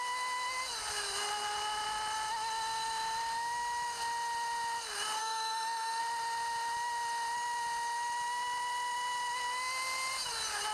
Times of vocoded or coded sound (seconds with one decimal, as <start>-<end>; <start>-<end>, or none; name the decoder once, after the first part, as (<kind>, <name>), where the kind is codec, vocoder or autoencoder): 5.2-6.0 (autoencoder, DAC-VAE)